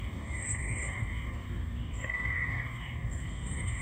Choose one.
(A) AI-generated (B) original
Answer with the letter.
A